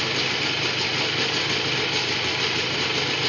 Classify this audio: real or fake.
real